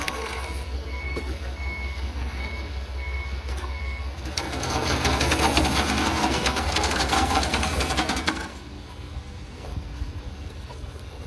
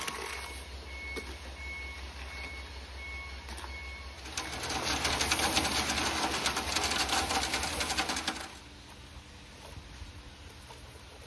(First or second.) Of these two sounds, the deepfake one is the first